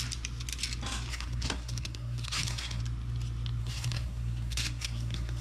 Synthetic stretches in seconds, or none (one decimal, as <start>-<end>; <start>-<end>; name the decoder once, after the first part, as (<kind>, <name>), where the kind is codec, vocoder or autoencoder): 1.1-2.8 (codec, SNAC); 3.6-5.4